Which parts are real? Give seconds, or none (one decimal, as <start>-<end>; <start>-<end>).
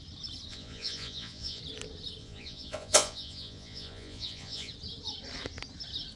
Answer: 0.0-0.5; 1.6-2.2; 4.7-6.2